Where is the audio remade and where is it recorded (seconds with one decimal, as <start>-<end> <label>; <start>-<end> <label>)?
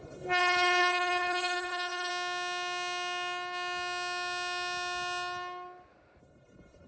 0.0-2.1 remade; 2.1-6.2 recorded; 6.2-6.9 remade